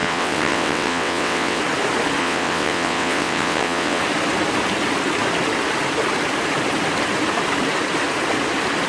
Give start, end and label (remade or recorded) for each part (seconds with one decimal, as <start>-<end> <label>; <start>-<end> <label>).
0.0-1.6 remade; 1.6-2.2 recorded; 2.2-4.0 remade; 4.0-8.9 recorded